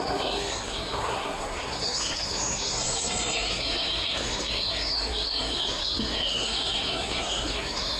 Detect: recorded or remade remade